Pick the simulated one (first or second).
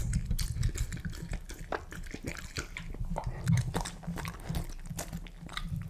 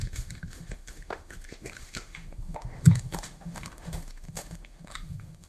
second